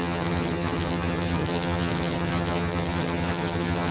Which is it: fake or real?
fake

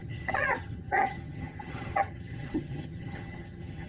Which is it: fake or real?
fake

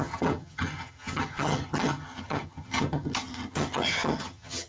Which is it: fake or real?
fake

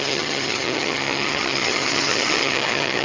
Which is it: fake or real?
fake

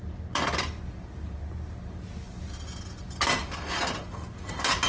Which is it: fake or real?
real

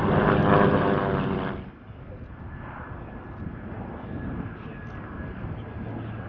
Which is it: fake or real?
real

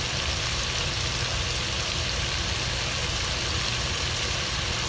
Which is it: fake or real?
real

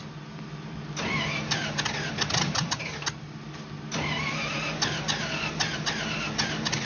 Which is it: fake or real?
real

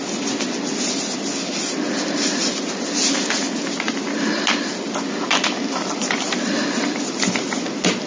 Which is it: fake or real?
real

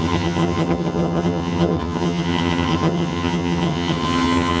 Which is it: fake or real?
fake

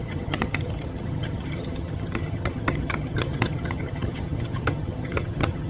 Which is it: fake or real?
fake